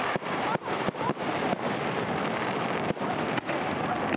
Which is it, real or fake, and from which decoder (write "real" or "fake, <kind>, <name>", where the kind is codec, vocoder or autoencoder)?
real